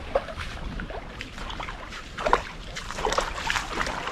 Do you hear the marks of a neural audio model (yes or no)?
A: yes